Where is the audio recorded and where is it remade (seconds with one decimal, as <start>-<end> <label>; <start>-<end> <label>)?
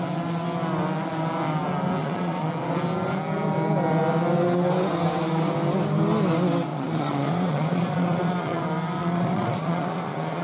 0.0-2.0 recorded; 2.0-2.5 remade; 2.5-6.7 recorded; 6.7-8.6 remade; 8.6-9.0 recorded; 9.0-10.4 remade